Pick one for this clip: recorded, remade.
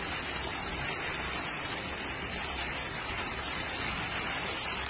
recorded